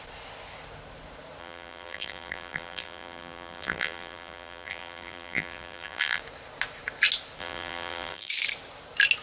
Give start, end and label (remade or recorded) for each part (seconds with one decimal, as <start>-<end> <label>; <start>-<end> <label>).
0.0-1.4 recorded; 1.4-6.2 remade; 6.2-7.4 recorded; 7.4-8.3 remade; 8.3-9.2 recorded